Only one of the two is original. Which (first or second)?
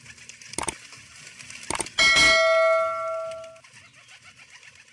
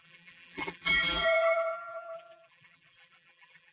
first